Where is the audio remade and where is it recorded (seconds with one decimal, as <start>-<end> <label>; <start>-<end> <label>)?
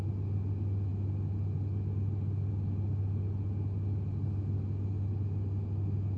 0.0-6.2 recorded